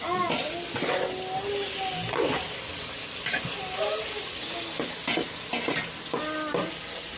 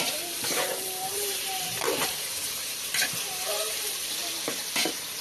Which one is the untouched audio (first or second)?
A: first